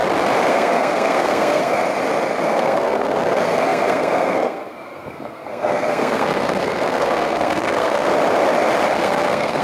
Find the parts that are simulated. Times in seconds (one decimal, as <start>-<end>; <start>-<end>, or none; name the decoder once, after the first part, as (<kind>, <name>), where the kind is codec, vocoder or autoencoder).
0.5-1.8 (codec, SNAC); 2.4-8.1; 9.0-9.6